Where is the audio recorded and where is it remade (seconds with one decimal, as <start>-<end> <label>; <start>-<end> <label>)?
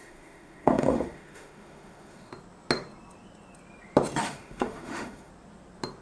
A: 0.0-2.3 remade; 2.3-4.2 recorded; 4.2-5.3 remade; 5.3-6.0 recorded